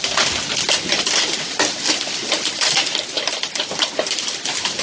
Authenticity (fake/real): fake